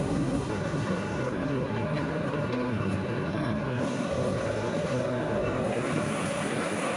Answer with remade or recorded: remade